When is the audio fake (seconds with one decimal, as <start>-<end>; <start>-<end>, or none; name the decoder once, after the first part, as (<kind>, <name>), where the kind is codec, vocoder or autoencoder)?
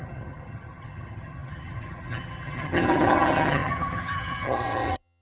0.0-5.2 (vocoder, HiFi-GAN)